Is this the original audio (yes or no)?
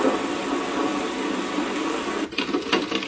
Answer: yes